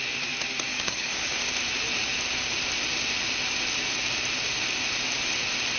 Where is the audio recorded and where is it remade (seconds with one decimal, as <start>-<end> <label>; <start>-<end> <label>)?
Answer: 0.0-0.7 recorded; 0.7-1.4 remade; 1.4-5.8 recorded